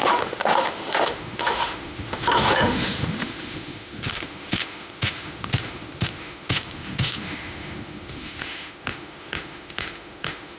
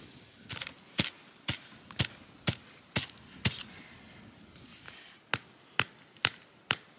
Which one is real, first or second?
second